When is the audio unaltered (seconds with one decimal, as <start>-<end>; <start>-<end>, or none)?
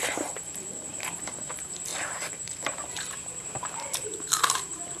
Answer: none